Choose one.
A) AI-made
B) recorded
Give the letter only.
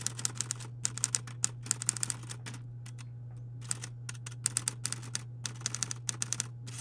B